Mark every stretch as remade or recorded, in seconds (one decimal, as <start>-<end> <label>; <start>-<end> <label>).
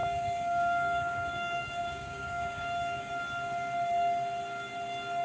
0.0-3.1 remade; 3.1-5.2 recorded